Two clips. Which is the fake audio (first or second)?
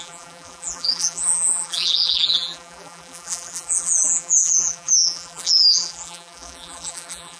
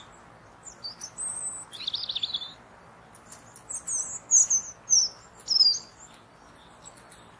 first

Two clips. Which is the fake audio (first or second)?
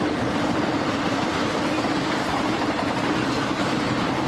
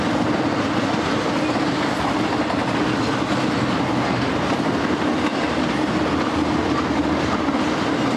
first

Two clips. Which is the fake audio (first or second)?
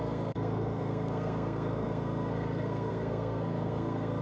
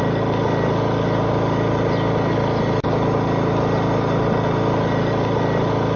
first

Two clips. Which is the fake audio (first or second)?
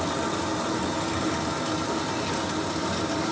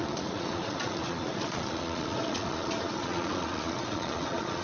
second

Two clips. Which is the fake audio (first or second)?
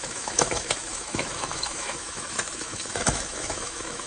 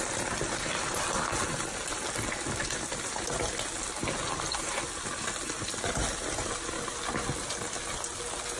first